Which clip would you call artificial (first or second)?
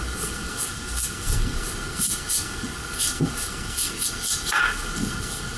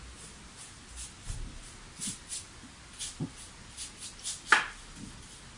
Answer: first